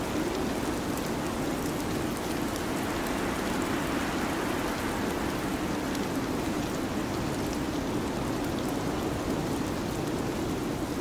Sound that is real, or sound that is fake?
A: real